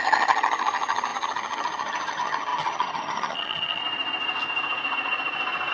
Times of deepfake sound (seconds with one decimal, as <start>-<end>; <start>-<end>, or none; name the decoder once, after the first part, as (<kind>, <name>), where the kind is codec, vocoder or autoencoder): 0.0-3.8 (vocoder, HiFi-GAN)